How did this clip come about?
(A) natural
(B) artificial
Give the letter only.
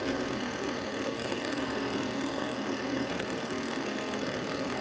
B